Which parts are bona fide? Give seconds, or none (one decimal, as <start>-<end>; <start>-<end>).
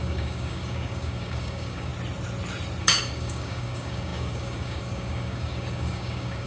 1.9-2.8